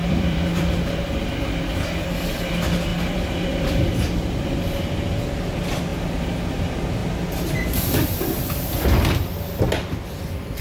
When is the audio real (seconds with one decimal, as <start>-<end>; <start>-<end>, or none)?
0.7-2.9; 4.8-5.9; 6.6-10.6